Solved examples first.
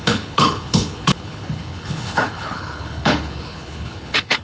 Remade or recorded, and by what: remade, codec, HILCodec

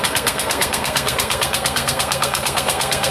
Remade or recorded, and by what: remade, codec, SNAC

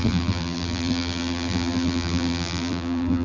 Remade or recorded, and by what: remade, vocoder, BigVGAN v2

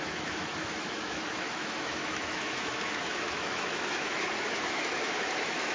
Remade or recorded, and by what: remade, autoencoder, DAC-VAE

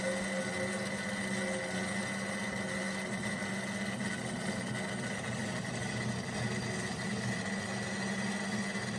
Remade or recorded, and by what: recorded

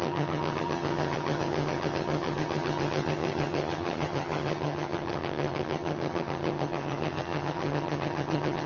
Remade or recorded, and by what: remade, vocoder, HiFi-GAN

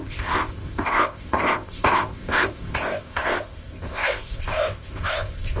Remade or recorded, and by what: remade, codec, ZipCodec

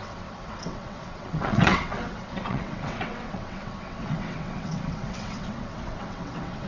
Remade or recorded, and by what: remade, vocoder, WaveNeXt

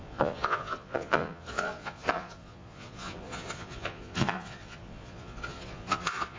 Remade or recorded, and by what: remade, vocoder, Vocos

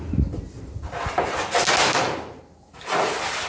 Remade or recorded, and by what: recorded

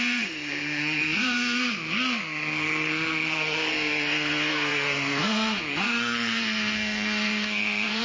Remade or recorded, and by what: remade, codec, SNAC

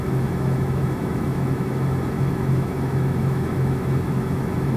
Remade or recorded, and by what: remade, autoencoder, DAC-VAE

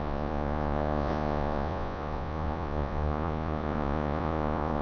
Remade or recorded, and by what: remade, vocoder, Vocos